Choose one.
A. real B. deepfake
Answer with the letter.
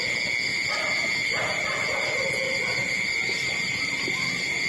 A